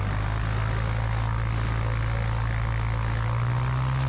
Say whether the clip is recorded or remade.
recorded